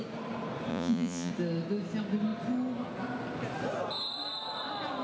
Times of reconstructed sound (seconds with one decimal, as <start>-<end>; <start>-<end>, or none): 0.7-1.3